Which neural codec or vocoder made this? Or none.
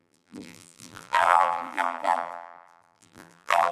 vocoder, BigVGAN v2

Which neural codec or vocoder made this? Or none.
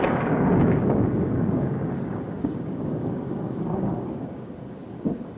codec, DAC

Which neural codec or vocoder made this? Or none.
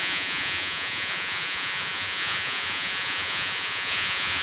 vocoder, Vocos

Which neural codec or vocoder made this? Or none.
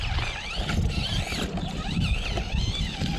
none